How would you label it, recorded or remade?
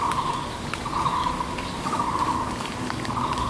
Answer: remade